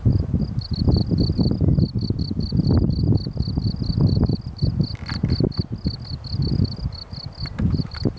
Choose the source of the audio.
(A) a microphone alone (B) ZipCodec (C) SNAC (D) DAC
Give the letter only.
A